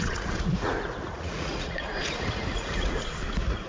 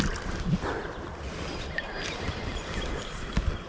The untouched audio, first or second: second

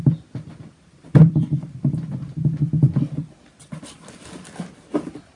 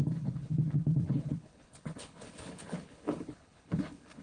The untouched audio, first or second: first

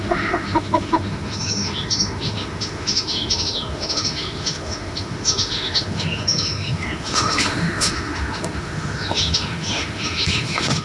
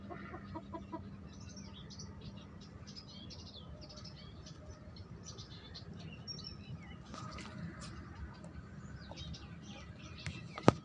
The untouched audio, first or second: second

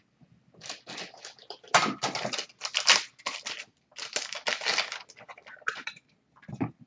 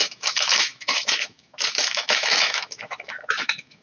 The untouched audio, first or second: first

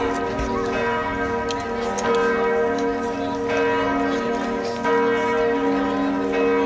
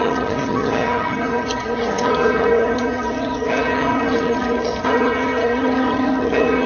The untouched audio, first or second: first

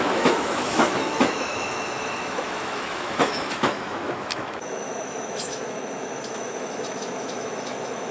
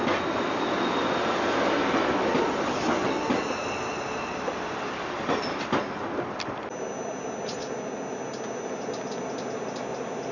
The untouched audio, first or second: second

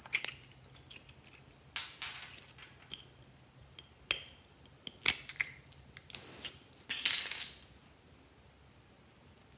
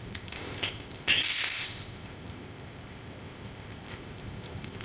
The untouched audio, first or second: first